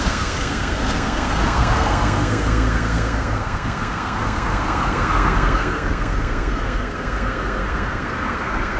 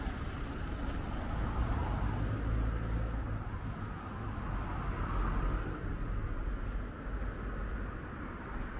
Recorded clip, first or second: second